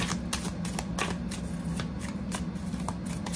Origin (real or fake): real